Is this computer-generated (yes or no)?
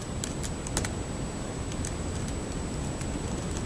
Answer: no